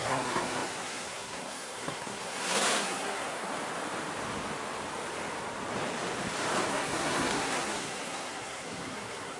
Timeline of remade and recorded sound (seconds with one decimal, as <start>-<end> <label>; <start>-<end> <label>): 0.0-3.5 remade; 3.5-6.7 recorded; 6.7-9.4 remade